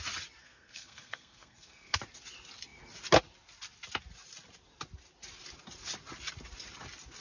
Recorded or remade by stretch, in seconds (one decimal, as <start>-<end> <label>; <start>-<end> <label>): 0.0-0.4 recorded; 0.4-2.0 remade; 2.0-7.2 recorded